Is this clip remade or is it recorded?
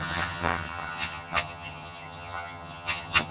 remade